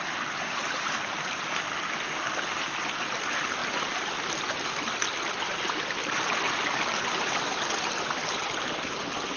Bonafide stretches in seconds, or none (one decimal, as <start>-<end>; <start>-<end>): 0.0-9.4